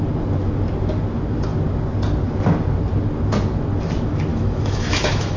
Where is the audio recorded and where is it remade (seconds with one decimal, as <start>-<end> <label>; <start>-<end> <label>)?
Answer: 0.0-4.3 recorded; 4.3-5.4 remade